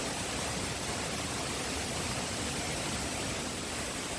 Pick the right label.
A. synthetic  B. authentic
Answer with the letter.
B